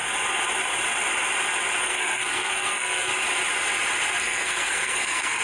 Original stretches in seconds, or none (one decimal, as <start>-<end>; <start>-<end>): 0.0-1.8; 3.1-4.2